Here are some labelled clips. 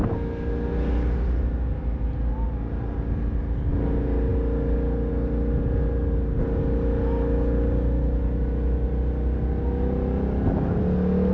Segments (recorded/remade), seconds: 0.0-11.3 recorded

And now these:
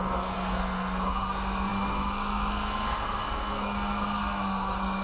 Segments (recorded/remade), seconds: 0.0-5.0 remade

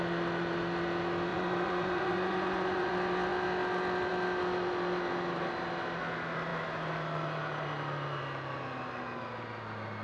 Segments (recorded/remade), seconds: 0.0-1.3 recorded; 1.3-2.9 remade; 2.9-10.0 recorded